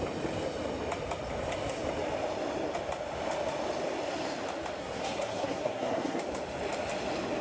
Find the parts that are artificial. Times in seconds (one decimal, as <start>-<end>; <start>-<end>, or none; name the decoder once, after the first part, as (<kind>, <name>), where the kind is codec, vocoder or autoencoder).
4.8-6.2 (codec, SNAC)